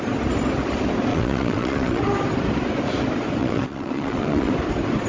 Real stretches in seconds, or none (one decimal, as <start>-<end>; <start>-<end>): 0.0-1.1; 2.0-3.4; 4.5-5.1